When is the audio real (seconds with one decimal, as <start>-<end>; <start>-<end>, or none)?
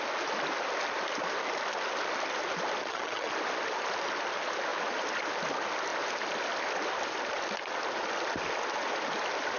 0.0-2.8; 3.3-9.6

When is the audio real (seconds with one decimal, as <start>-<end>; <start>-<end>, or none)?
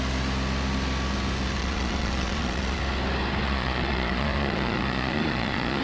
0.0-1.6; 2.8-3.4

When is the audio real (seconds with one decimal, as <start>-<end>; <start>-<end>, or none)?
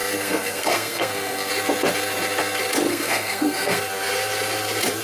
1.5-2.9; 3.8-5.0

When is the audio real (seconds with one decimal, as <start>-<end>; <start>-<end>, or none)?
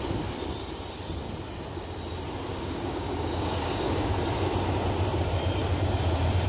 0.0-2.5; 4.1-6.5